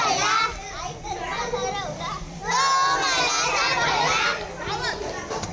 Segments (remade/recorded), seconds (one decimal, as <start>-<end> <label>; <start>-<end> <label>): 0.0-5.5 recorded